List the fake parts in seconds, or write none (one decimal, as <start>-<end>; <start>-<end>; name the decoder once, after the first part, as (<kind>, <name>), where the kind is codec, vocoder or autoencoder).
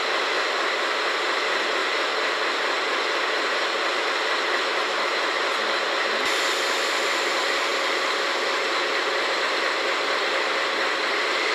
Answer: 0.0-1.8 (vocoder, BigVGAN v2); 7.0-11.5